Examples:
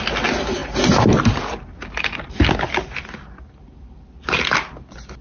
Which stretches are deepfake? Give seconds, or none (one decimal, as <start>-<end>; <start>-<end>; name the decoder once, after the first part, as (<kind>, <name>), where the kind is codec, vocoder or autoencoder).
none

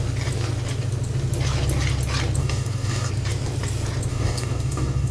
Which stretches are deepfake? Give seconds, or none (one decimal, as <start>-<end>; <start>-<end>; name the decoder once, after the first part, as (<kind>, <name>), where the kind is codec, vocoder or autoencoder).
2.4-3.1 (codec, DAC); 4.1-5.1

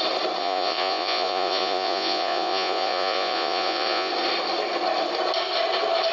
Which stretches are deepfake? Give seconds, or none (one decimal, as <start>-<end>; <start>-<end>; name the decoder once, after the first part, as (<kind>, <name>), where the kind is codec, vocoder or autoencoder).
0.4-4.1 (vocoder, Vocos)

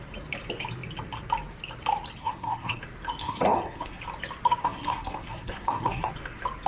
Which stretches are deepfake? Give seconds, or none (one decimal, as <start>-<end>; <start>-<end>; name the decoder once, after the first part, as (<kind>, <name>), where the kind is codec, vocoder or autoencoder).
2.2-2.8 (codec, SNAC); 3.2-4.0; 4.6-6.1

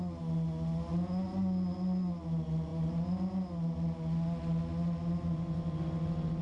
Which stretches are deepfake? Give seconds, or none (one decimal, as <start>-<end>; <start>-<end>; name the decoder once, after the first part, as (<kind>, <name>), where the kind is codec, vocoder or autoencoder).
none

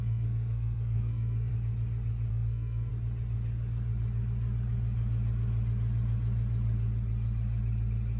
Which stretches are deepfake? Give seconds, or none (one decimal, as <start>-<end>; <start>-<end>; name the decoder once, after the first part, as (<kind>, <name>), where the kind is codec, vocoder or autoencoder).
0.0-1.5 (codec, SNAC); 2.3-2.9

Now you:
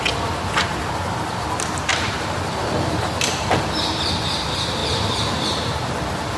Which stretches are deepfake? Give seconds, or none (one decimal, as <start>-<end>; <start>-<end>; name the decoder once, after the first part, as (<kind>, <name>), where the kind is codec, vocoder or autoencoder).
1.9-2.7 (vocoder, BigVGAN v2); 4.8-5.8